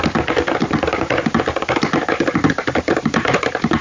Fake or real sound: real